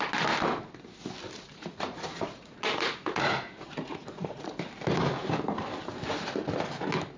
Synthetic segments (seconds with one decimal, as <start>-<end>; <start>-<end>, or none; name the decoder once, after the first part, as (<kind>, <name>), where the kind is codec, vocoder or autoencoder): 1.5-4.5 (vocoder, Vocos)